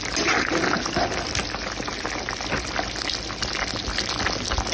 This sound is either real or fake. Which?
real